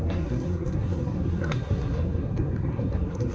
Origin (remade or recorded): remade